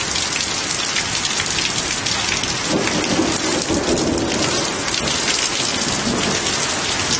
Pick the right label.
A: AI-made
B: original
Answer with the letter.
B